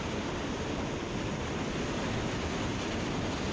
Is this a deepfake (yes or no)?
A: yes